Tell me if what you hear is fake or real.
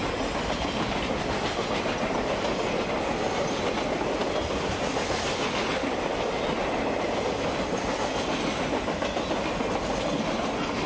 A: real